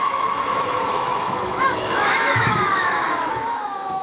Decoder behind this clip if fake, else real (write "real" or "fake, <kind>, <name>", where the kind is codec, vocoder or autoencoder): fake, autoencoder, DAC-VAE